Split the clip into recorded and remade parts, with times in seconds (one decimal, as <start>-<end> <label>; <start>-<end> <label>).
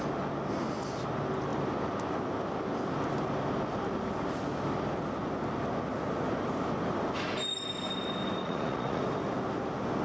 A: 0.0-8.4 recorded; 8.4-9.0 remade; 9.0-10.0 recorded